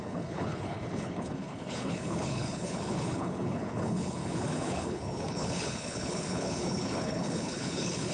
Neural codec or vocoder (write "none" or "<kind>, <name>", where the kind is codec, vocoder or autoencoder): codec, HILCodec